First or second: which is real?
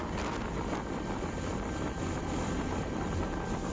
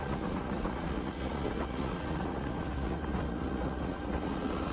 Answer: first